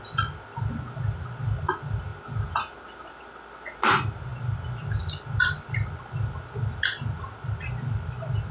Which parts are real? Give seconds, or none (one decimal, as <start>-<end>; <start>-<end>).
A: 0.0-8.5